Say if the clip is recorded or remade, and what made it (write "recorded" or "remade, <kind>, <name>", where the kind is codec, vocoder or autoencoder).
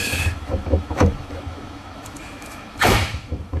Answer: remade, autoencoder, DAC-VAE